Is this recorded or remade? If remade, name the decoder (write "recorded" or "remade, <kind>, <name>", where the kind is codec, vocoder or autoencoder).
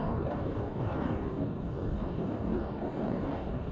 remade, codec, DAC